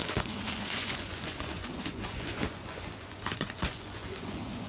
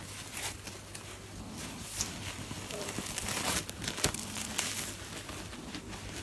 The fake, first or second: first